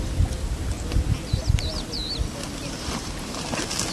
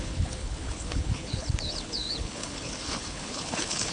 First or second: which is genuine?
first